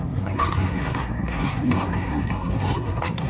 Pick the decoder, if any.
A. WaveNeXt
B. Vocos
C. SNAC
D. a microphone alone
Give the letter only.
C